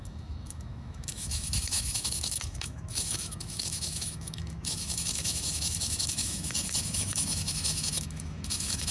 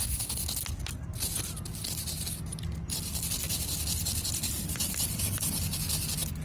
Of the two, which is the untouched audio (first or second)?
second